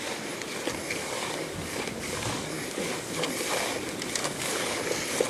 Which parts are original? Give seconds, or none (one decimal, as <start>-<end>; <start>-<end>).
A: 0.0-1.0; 3.3-4.2; 4.8-5.3